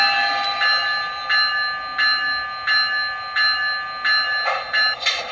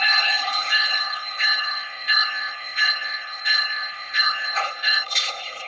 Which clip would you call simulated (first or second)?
second